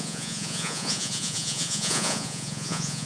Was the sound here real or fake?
fake